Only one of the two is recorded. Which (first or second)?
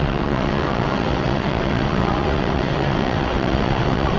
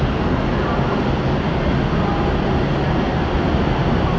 second